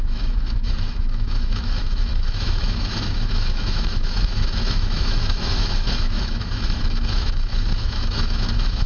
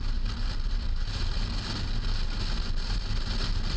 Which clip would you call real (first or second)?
second